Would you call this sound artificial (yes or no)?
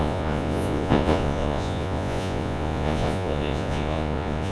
yes